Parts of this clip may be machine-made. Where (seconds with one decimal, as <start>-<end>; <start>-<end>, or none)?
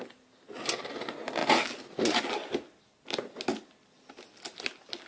none